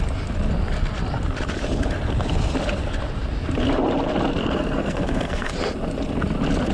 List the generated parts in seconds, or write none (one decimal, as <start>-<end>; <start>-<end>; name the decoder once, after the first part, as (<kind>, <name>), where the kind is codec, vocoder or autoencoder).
4.4-5.5 (codec, SNAC)